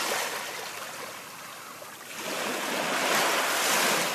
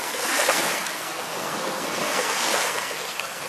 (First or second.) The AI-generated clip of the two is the second